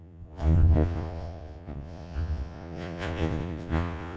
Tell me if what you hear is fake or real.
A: fake